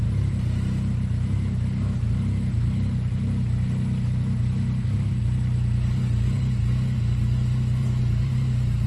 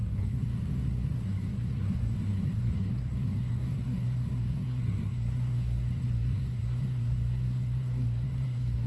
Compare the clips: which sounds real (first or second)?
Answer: first